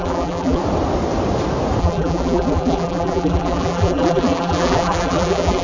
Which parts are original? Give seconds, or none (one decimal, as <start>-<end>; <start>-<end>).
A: 0.6-1.8